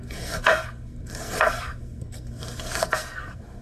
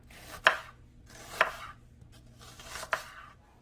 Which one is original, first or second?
second